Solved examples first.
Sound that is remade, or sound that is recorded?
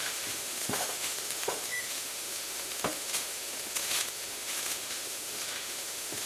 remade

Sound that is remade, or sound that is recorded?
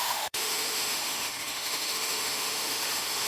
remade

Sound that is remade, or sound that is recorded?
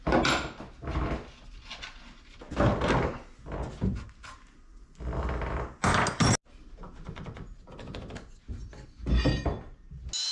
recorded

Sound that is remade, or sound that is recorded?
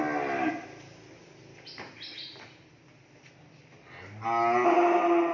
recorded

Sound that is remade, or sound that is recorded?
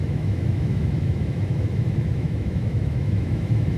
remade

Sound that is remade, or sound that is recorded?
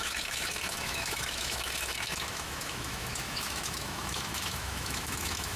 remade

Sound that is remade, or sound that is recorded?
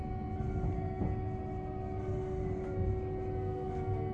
recorded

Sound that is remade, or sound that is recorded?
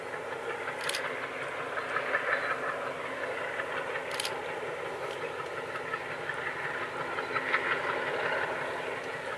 recorded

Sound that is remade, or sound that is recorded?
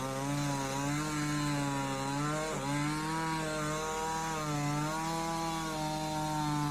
recorded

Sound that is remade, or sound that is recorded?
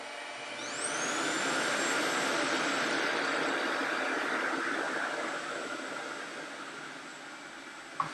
recorded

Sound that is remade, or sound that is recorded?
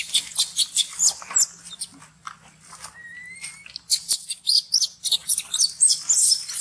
recorded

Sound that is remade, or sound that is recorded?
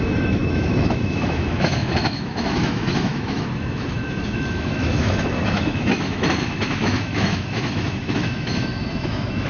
remade